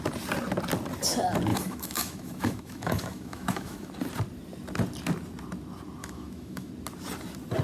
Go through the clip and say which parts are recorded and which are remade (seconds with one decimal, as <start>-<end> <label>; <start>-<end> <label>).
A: 0.0-1.5 recorded; 1.5-3.9 remade; 3.9-6.0 recorded; 6.0-6.7 remade; 6.7-7.6 recorded